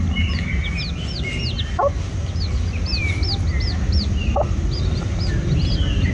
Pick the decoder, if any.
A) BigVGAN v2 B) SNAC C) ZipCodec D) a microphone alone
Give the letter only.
D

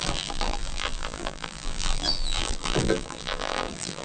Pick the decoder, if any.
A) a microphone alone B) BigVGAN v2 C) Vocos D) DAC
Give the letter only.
B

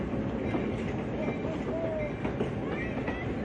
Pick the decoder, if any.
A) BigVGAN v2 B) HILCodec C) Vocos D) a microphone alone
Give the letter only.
D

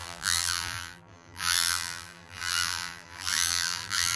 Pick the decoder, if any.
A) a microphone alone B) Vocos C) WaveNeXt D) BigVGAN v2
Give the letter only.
D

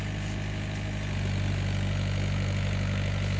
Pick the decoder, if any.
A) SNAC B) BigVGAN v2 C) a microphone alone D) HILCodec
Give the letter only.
C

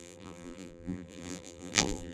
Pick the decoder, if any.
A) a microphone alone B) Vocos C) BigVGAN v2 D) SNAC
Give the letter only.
C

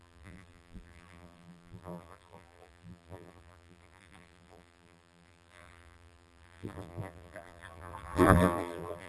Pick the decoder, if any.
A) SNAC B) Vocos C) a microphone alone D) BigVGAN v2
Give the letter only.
D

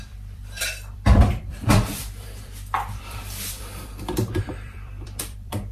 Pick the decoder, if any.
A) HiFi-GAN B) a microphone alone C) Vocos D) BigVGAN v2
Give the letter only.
D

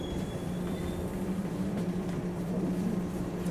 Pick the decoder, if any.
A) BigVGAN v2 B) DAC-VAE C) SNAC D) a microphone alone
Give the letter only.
A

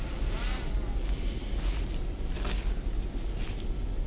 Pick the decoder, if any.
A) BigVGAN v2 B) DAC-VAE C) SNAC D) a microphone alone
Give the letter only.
D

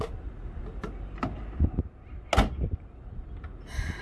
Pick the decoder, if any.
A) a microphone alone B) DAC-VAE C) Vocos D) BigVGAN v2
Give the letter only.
A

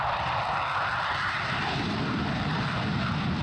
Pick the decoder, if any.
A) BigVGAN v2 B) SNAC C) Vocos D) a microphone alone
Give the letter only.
A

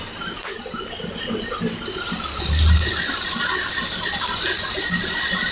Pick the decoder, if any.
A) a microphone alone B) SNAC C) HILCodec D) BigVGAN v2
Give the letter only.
A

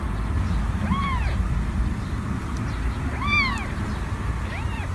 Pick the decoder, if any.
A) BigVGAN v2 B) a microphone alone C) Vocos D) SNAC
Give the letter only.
B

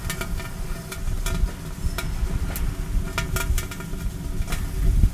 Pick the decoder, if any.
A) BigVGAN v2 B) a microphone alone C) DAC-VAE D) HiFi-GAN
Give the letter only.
B